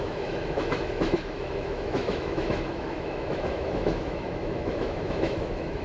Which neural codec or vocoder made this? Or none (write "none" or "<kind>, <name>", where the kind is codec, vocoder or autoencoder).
autoencoder, DAC-VAE